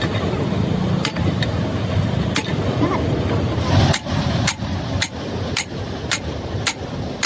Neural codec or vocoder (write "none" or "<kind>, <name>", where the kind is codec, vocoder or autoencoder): none